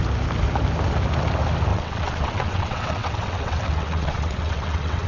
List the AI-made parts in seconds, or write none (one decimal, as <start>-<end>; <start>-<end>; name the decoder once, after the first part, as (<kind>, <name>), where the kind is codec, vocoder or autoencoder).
1.7-5.1 (vocoder, WaveNeXt)